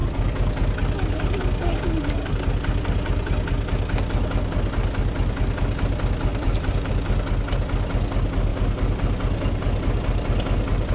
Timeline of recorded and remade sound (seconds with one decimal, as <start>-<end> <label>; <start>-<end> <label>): 0.0-6.3 recorded; 6.3-6.9 remade; 6.9-10.9 recorded